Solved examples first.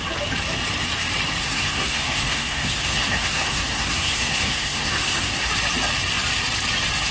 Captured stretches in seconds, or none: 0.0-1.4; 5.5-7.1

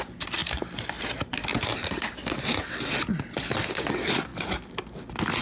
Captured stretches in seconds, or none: 0.0-5.4